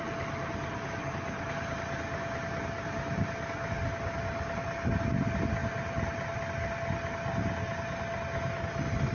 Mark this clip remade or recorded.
recorded